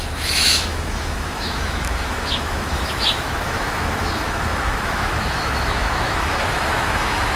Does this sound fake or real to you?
fake